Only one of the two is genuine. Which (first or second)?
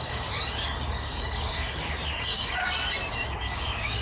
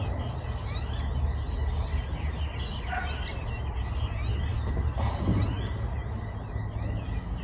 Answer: second